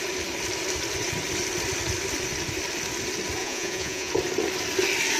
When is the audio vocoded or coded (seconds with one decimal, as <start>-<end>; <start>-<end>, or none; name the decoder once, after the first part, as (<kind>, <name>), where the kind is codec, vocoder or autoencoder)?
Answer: 3.4-4.1 (vocoder, Vocos)